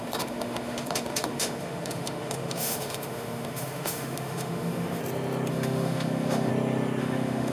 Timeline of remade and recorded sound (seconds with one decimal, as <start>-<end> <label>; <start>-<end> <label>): 0.0-5.0 remade; 5.0-5.5 recorded; 5.5-6.5 remade; 6.5-7.0 recorded; 7.0-7.5 remade